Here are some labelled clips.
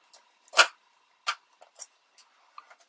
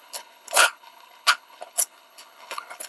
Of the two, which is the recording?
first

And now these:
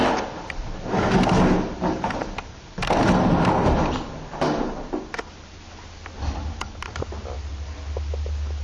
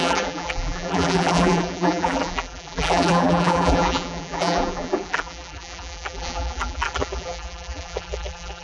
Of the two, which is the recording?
first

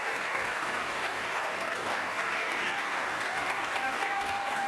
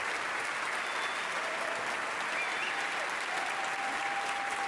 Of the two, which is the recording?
second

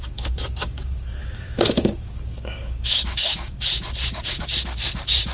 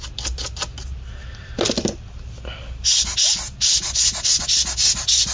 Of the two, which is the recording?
second